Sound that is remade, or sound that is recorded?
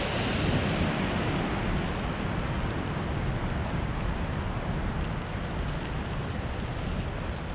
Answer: recorded